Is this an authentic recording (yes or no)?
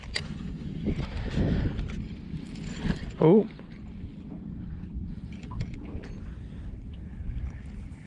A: yes